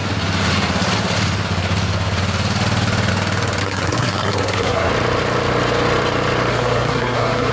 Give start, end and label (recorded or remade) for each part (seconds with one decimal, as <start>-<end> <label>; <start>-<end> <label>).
0.0-3.6 recorded; 3.6-4.9 remade; 4.9-6.5 recorded; 6.5-7.5 remade